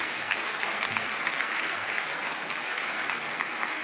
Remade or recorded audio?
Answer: remade